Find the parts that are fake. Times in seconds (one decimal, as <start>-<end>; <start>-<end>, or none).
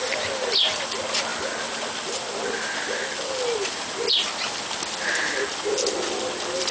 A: none